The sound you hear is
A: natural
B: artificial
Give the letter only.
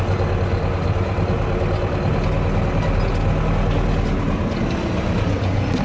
A